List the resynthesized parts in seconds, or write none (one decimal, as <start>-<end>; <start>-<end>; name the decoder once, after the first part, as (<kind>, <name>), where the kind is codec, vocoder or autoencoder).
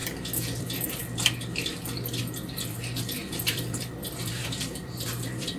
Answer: 0.6-1.0 (vocoder, BigVGAN v2); 2.2-5.6